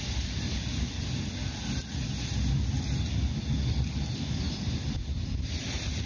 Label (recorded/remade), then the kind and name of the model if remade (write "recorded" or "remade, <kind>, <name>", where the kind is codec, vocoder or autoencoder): recorded